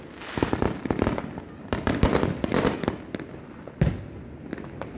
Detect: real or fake real